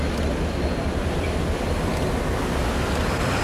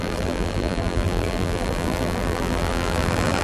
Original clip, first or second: first